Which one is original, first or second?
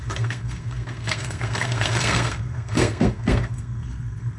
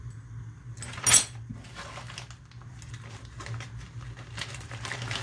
second